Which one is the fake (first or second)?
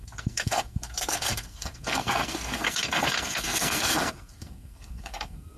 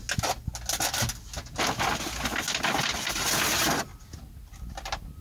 first